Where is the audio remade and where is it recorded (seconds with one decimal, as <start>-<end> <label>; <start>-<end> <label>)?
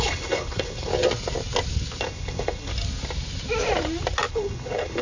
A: 0.0-0.9 remade; 0.9-2.0 recorded; 2.0-2.7 remade; 2.7-4.3 recorded; 4.3-5.0 remade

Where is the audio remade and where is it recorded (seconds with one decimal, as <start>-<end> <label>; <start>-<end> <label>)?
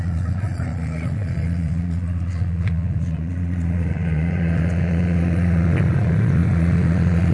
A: 0.0-7.3 remade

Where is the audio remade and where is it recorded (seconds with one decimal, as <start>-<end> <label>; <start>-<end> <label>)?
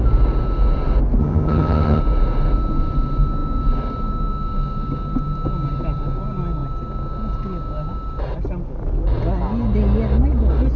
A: 0.0-1.2 recorded; 1.2-2.0 remade; 2.0-10.8 recorded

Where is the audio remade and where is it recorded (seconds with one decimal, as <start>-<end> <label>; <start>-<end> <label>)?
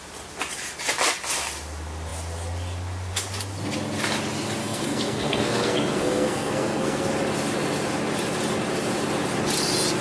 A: 0.0-4.6 recorded; 4.6-7.1 remade; 7.1-10.0 recorded